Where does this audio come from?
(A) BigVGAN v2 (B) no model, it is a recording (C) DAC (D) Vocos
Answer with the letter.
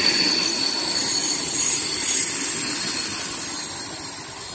B